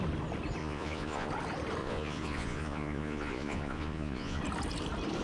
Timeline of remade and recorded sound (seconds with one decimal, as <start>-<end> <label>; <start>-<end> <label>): 0.0-0.6 recorded; 0.6-1.3 remade; 1.3-1.8 recorded; 1.8-4.4 remade; 4.4-5.2 recorded